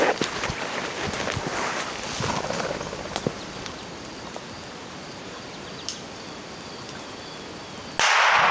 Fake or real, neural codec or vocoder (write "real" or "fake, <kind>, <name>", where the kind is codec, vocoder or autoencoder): real